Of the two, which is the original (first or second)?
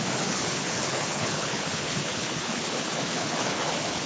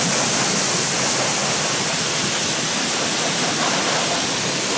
second